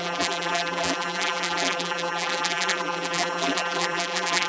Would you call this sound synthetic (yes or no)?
yes